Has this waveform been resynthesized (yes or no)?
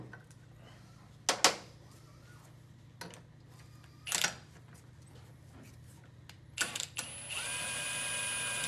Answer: no